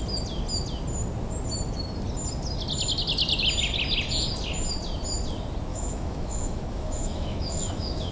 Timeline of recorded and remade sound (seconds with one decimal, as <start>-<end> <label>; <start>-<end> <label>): 0.0-5.7 recorded; 5.7-8.1 remade